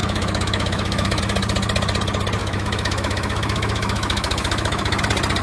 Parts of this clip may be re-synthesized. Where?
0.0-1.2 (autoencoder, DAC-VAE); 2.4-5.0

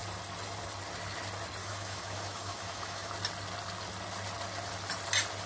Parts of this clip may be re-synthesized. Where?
1.6-3.1 (autoencoder, DAC-VAE)